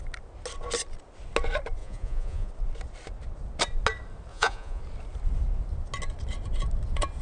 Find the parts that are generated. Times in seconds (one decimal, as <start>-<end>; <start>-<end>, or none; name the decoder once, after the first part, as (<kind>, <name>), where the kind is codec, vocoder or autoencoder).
1.8-2.5 (vocoder, Vocos); 4.3-4.8